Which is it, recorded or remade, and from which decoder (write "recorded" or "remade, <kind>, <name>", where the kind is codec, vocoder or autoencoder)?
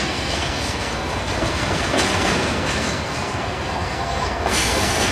remade, codec, SNAC